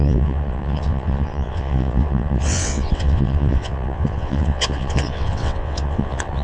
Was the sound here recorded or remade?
remade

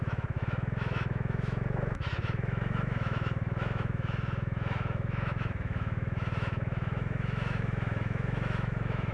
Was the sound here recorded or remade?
remade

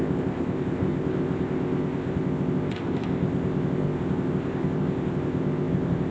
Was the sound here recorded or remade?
remade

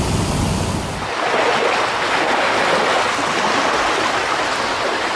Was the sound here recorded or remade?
recorded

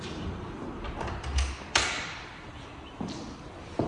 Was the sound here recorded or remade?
recorded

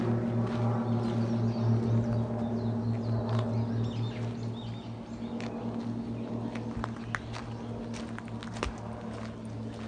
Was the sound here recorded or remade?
recorded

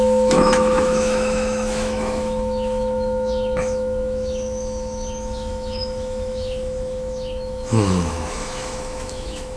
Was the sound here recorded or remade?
remade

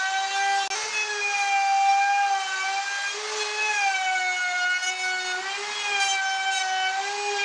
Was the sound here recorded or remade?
recorded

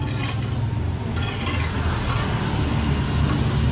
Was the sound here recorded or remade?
recorded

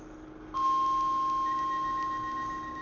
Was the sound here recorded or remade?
recorded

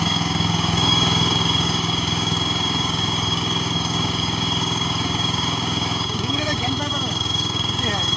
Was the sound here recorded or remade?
remade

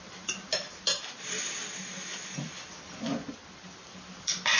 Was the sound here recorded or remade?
recorded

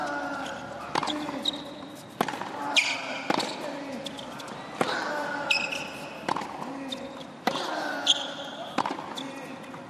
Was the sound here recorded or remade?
recorded